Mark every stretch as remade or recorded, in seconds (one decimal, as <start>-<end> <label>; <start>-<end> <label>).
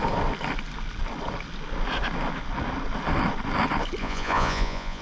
0.0-4.0 recorded; 4.0-5.0 remade